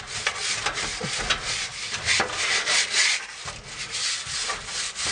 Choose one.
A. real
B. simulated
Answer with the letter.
A